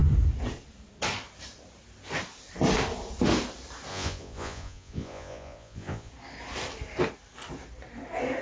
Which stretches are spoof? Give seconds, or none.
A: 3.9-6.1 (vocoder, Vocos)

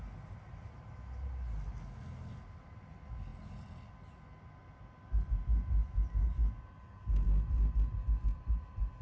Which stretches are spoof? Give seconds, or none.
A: 3.3-4.2 (vocoder, BigVGAN v2)

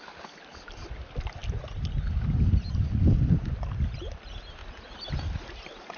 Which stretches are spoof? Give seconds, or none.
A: none

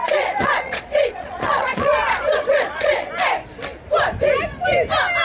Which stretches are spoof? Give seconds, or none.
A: 0.0-3.1 (vocoder, Vocos)

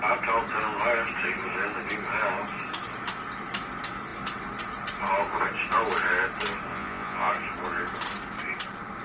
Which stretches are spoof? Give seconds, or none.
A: 6.7-7.3 (vocoder, Vocos)

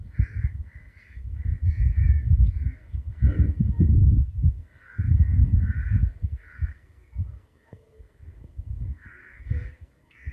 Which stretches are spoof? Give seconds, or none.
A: 0.0-10.3 (codec, SNAC)

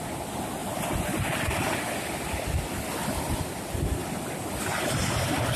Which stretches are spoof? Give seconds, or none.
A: 0.6-2.4 (vocoder, BigVGAN v2)